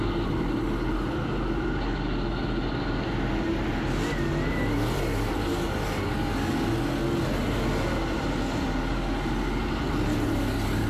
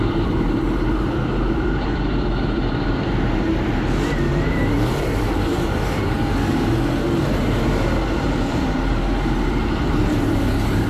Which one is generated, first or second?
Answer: second